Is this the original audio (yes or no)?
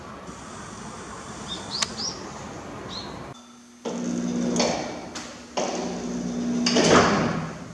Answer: yes